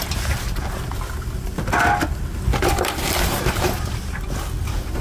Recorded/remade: recorded